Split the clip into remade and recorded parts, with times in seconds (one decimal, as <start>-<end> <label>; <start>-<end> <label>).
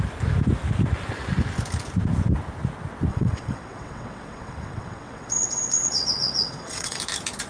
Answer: 0.0-3.1 recorded; 3.1-7.0 remade; 7.0-7.5 recorded